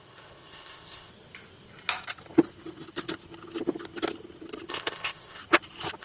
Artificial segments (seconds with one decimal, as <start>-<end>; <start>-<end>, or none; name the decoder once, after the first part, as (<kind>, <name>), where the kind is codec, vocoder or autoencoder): 0.0-1.1 (codec, ZipCodec); 4.7-5.4